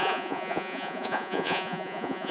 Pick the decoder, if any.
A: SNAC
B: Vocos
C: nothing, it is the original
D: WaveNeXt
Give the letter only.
B